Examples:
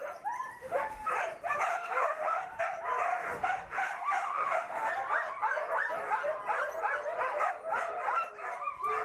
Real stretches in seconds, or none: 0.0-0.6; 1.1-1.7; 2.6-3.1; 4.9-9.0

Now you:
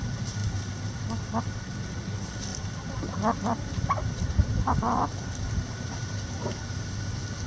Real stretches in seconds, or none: 0.0-2.5; 6.7-7.5

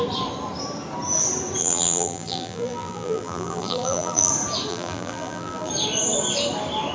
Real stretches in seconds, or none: 0.0-1.6; 4.3-4.7; 5.7-6.9

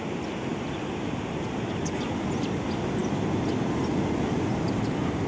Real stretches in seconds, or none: 0.0-5.3

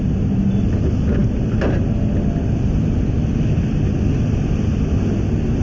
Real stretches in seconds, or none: 0.0-5.6

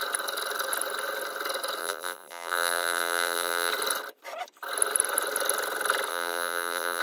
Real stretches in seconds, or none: 0.0-1.8; 3.7-6.1

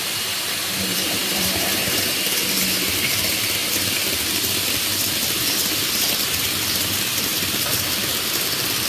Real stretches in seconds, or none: 0.0-0.9; 2.2-8.9

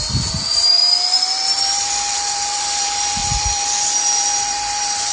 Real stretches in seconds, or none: none